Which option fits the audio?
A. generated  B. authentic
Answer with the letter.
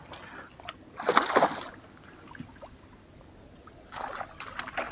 B